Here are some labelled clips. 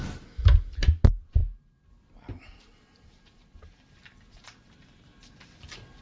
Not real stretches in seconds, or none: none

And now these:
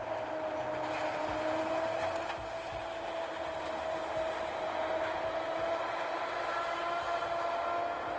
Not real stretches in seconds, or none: none

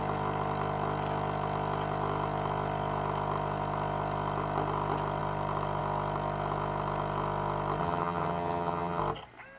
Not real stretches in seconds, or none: 7.8-9.0 (vocoder, HiFi-GAN)

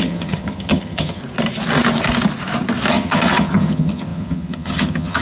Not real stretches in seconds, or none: 0.0-1.2 (vocoder, HiFi-GAN); 2.9-5.2